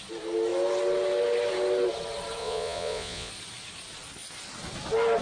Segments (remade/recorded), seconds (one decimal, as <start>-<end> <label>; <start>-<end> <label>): 0.0-2.4 recorded; 2.4-3.3 remade; 3.3-5.2 recorded